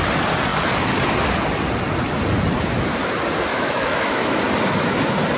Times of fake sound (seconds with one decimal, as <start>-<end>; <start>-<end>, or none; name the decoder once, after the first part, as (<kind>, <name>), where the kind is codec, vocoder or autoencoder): 3.5-4.4 (autoencoder, DAC-VAE)